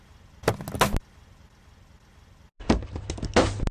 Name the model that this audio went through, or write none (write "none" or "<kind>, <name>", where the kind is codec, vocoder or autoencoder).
none